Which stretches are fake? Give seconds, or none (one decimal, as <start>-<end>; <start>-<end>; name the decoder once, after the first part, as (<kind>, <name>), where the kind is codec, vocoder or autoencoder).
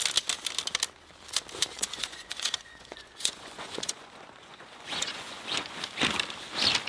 1.7-5.8 (vocoder, Vocos)